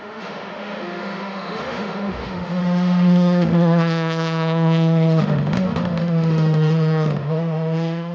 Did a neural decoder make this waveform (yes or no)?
yes